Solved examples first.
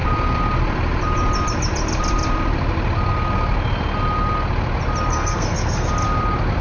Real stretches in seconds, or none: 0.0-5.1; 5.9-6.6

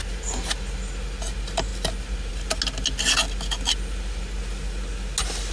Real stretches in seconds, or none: 0.0-5.5

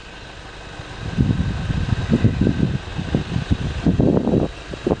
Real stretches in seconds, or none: 0.0-5.0

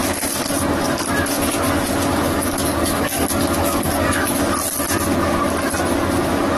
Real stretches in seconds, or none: 0.0-2.1; 4.4-6.6